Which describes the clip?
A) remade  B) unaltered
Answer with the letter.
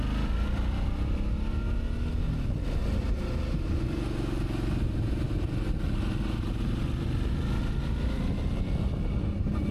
B